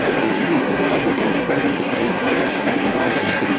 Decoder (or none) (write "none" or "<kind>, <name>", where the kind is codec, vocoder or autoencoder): codec, SNAC